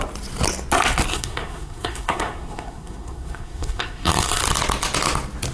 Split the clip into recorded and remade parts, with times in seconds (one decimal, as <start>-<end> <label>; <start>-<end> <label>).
0.0-1.1 recorded; 1.1-4.4 remade; 4.4-5.5 recorded